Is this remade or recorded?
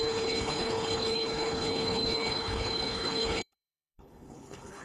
remade